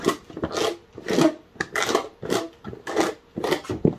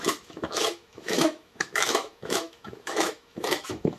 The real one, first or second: first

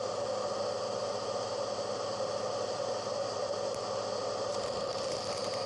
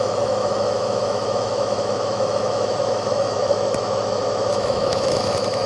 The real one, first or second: first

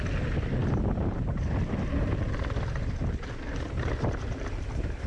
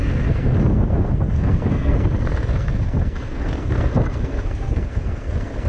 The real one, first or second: first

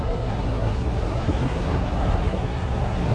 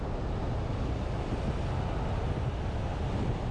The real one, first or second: second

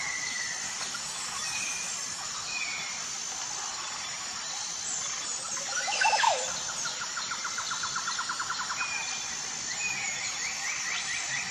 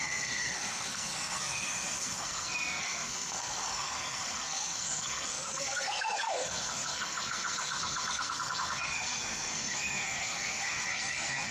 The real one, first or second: first